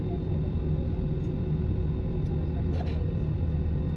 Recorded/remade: recorded